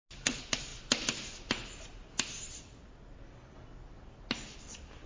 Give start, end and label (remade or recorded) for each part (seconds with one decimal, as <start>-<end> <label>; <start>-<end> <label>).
0.0-5.1 recorded